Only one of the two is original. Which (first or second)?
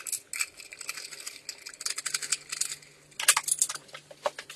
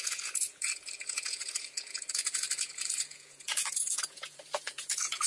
first